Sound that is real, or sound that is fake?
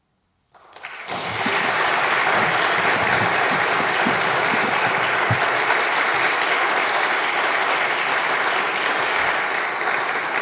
real